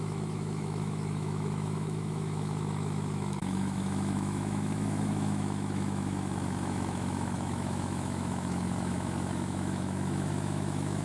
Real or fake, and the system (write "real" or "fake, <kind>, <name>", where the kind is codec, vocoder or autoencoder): fake, autoencoder, DAC-VAE